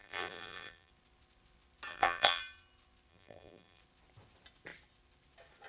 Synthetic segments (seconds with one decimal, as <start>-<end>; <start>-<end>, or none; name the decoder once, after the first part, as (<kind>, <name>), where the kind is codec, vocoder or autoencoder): 0.0-0.9 (vocoder, BigVGAN v2); 1.9-2.4; 3.1-3.8